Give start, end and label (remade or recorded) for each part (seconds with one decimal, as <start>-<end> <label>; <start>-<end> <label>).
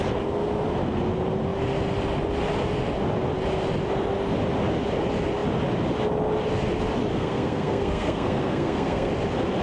0.0-7.1 recorded; 7.1-9.1 remade; 9.1-9.6 recorded